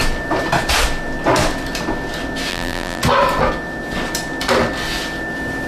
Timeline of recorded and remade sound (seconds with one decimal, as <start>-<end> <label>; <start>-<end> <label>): 0.0-2.5 recorded; 2.5-3.0 remade; 3.0-5.7 recorded